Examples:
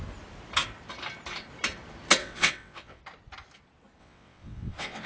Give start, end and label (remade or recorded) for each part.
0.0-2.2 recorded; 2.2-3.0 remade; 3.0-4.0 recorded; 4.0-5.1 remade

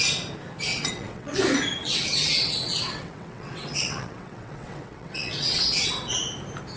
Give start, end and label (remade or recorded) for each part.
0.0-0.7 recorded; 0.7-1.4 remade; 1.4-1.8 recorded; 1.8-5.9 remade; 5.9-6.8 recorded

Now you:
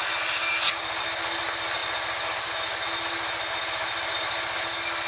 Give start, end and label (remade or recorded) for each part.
0.0-5.1 recorded

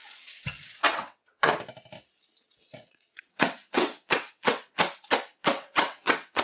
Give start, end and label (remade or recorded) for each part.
0.0-1.5 remade; 1.5-2.3 recorded; 2.3-4.6 remade; 4.6-5.4 recorded; 5.4-6.4 remade

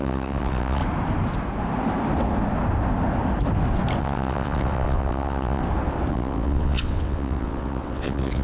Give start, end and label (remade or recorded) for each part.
0.0-0.8 remade; 0.8-4.0 recorded; 4.0-5.6 remade; 5.6-6.1 recorded; 6.1-8.4 remade

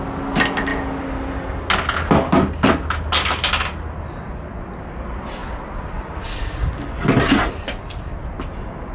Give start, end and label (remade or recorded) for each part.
0.0-8.9 recorded

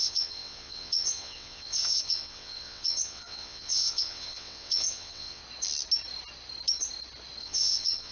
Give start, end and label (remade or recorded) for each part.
0.0-5.4 remade; 5.4-7.4 recorded; 7.4-8.1 remade

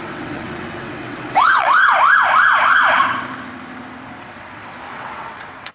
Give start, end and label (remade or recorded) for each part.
0.0-1.8 remade; 1.8-4.2 recorded; 4.2-5.7 remade